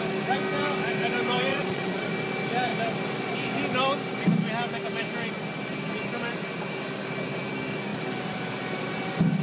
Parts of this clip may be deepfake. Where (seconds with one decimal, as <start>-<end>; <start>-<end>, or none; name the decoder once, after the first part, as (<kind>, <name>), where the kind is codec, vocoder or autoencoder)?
1.5-2.1 (vocoder, Vocos)